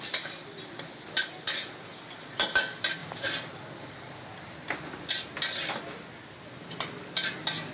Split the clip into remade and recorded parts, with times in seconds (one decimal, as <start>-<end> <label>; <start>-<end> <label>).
0.0-7.7 recorded